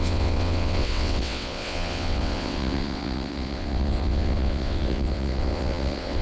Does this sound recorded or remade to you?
remade